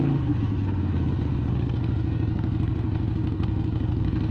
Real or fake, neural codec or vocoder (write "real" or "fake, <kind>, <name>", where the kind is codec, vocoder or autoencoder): fake, codec, SNAC